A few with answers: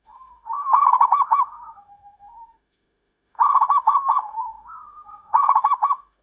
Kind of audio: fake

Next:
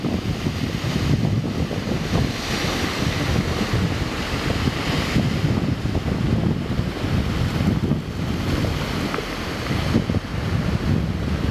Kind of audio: real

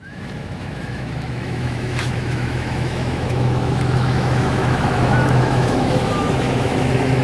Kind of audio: fake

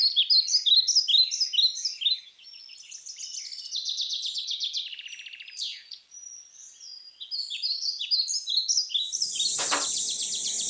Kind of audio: real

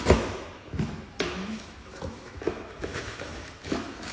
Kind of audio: fake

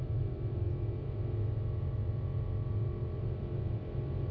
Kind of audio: real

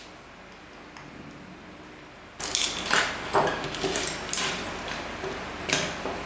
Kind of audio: real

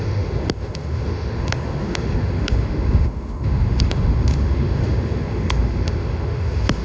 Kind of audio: fake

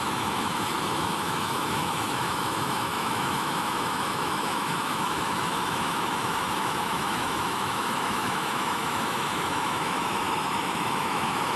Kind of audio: fake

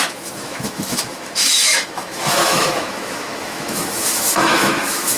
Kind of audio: fake